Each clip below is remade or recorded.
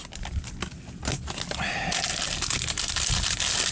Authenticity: recorded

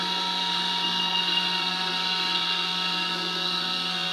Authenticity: remade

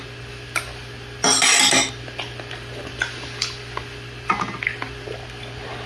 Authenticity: recorded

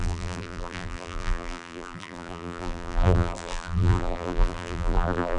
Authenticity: remade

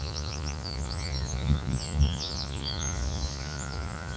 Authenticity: remade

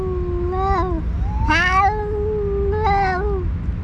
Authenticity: recorded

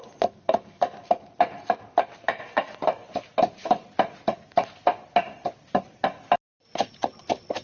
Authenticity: recorded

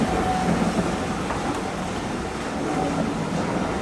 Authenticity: recorded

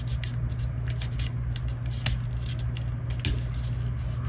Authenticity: recorded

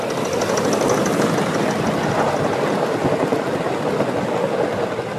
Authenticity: recorded